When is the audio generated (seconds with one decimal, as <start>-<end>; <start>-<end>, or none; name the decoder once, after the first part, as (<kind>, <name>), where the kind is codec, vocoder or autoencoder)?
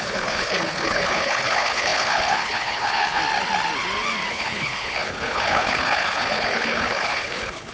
0.0-3.2 (codec, HILCodec); 4.3-7.7